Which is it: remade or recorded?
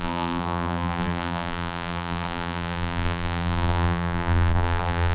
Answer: remade